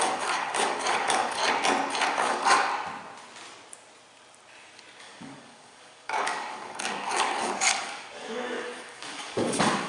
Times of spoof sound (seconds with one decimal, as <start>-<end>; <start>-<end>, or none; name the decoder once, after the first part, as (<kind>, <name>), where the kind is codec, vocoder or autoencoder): 0.0-1.4 (codec, DAC); 2.1-2.7; 5.0-9.9